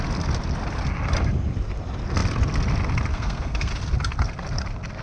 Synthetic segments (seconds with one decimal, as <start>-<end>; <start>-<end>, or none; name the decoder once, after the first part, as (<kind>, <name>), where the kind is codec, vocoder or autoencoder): 3.1-3.7 (codec, SNAC)